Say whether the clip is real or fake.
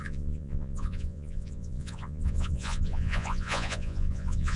fake